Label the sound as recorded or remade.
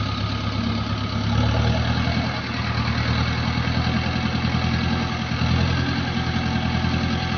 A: recorded